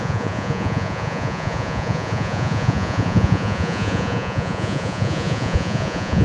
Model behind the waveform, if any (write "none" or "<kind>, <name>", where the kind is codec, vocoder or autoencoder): vocoder, Vocos